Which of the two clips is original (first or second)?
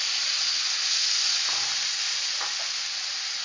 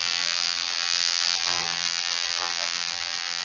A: first